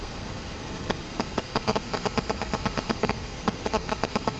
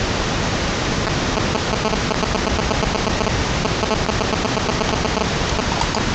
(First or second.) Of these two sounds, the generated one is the first